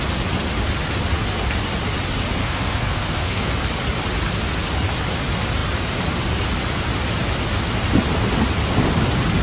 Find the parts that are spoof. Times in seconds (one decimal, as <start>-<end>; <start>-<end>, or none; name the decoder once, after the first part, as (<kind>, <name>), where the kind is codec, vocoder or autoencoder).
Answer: 2.4-3.5 (codec, SNAC)